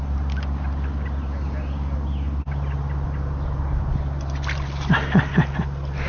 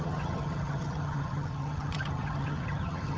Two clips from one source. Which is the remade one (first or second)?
second